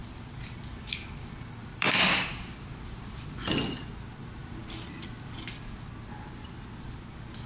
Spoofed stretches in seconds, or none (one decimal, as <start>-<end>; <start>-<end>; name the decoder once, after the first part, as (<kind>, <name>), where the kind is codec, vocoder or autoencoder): 0.0-0.6 (vocoder, BigVGAN v2); 1.6-3.5